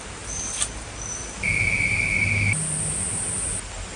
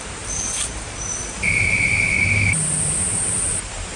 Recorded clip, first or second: first